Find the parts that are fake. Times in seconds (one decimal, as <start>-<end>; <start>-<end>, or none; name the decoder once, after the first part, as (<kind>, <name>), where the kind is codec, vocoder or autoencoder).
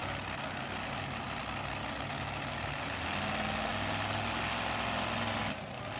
none